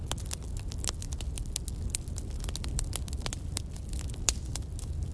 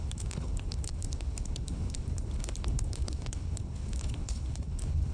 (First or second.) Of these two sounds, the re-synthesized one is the second